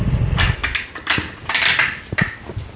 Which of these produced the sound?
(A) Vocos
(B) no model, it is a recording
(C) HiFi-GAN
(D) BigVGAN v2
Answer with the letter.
B